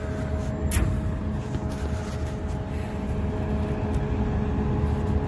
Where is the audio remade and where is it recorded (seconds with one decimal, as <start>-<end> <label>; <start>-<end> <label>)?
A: 0.0-5.3 recorded